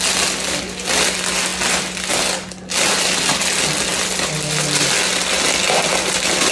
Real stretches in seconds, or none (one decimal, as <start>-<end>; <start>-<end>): 0.0-6.5